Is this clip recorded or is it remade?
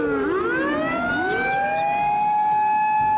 recorded